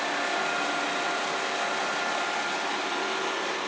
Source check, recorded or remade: recorded